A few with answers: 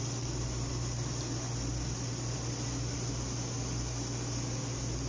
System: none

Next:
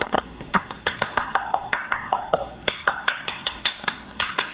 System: codec, SNAC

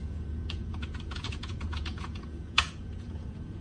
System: vocoder, Vocos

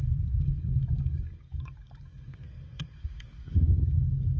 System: codec, DAC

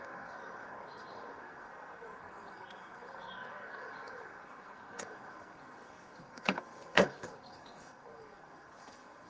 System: codec, SNAC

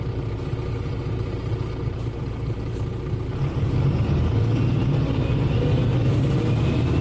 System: none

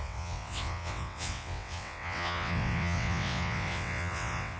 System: vocoder, WaveNeXt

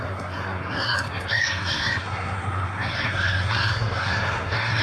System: codec, SNAC